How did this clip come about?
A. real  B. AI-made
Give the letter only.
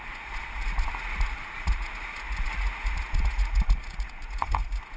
B